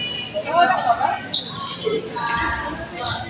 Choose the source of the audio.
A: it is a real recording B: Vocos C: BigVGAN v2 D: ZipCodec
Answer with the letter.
A